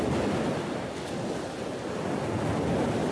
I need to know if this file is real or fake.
real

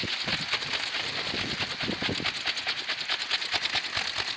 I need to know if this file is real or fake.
real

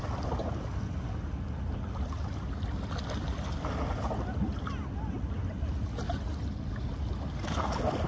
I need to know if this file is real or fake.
real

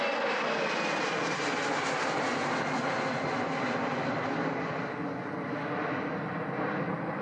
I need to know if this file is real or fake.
real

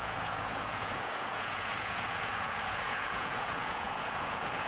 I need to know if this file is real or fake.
fake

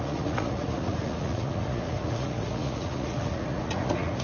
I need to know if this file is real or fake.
fake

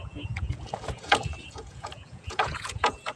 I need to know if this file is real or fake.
fake